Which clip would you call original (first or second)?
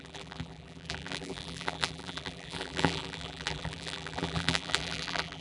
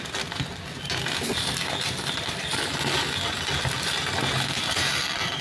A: second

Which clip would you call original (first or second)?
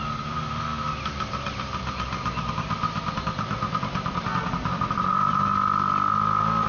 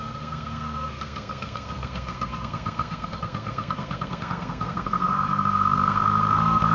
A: first